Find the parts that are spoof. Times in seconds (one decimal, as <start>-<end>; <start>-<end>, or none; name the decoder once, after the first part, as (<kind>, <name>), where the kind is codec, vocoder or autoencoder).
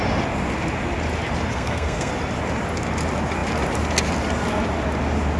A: 1.5-2.1 (codec, SNAC)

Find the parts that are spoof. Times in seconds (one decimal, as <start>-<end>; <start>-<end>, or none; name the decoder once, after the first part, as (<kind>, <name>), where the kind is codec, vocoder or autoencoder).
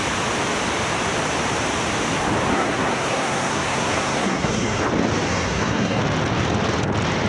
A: 2.5-4.8 (codec, SNAC); 5.3-6.0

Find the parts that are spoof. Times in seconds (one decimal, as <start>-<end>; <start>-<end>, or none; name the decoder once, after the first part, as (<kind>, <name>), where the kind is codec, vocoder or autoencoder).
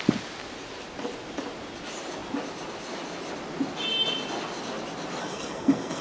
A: 5.2-6.0 (codec, SNAC)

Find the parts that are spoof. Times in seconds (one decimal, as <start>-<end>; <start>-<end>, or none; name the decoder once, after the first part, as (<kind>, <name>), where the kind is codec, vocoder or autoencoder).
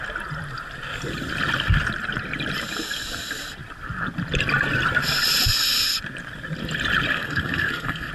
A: 7.1-8.1 (codec, SNAC)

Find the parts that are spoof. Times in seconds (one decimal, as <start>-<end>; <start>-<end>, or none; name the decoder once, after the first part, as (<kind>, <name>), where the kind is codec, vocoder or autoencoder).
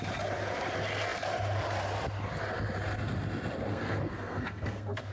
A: 3.7-5.1 (codec, SNAC)